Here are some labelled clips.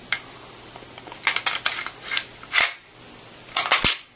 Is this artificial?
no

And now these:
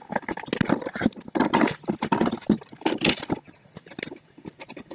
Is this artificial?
no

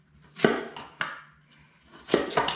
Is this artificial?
no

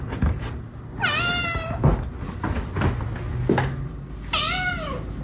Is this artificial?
no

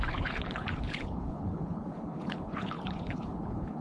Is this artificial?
yes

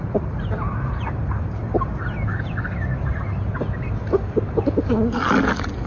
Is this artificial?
no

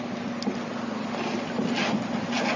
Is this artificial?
no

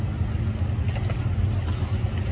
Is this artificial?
no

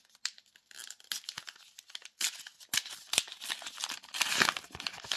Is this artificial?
no